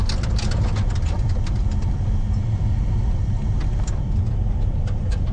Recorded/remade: recorded